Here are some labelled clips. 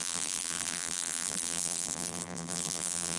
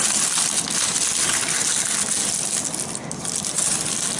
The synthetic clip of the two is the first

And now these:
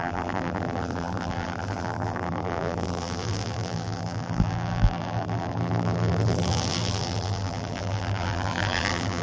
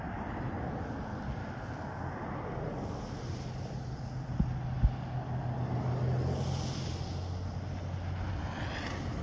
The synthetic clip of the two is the first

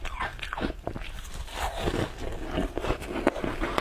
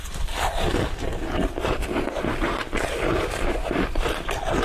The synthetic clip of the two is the second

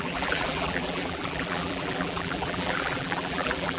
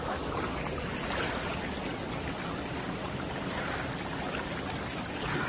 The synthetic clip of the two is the first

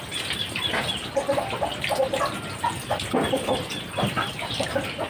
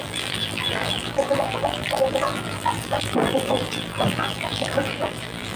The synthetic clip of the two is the second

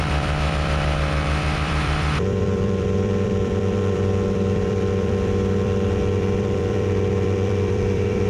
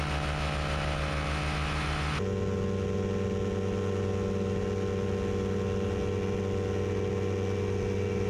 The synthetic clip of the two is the first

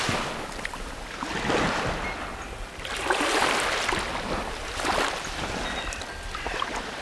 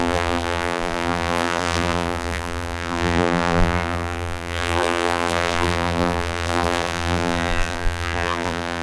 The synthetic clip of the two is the second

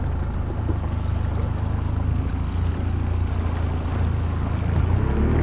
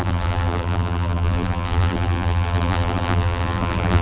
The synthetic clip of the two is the second